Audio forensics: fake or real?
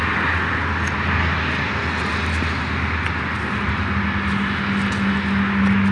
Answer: real